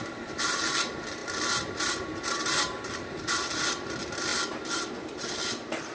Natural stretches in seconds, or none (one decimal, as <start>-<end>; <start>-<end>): 1.2-3.0; 4.3-5.1